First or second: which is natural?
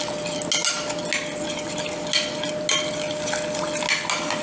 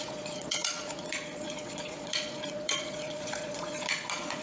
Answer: first